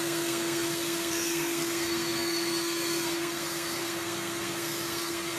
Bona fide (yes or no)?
no